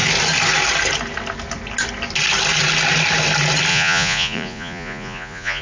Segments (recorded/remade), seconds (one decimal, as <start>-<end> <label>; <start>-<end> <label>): 0.0-3.7 recorded; 3.7-5.6 remade